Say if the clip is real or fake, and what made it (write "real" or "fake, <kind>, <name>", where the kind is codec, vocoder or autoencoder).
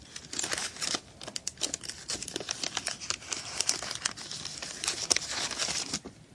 real